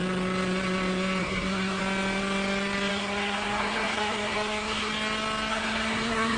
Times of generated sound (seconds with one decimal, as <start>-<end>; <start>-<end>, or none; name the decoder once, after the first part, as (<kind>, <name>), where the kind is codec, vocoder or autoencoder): 1.2-1.8 (codec, SNAC); 2.9-4.9; 5.5-6.4